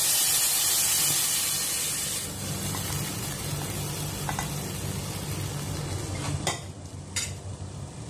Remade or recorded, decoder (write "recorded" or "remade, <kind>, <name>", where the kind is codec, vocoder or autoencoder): recorded